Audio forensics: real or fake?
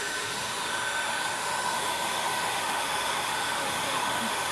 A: fake